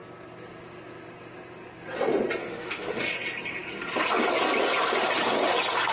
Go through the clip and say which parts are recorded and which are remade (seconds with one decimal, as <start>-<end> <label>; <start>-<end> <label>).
0.0-2.4 recorded; 2.4-3.0 remade; 3.0-5.9 recorded